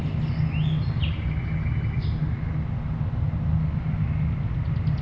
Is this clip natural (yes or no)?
yes